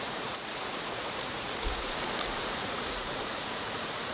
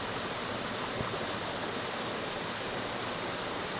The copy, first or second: first